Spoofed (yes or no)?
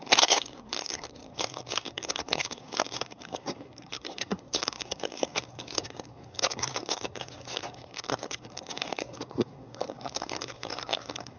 yes